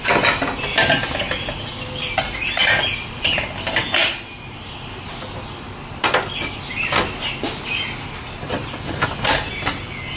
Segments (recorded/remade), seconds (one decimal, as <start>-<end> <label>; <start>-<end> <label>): 0.0-10.2 recorded